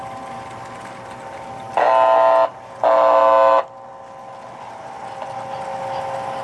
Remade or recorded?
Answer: recorded